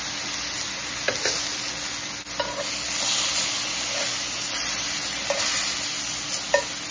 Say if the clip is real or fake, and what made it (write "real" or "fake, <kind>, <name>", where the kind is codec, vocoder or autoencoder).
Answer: real